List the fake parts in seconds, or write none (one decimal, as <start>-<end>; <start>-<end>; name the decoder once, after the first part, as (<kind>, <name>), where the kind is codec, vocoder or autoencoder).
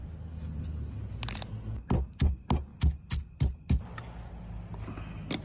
none